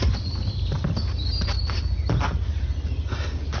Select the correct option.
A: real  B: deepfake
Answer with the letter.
A